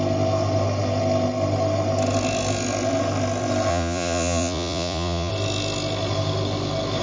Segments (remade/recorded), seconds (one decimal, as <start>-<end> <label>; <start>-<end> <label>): 0.0-3.7 recorded; 3.7-5.3 remade; 5.3-7.0 recorded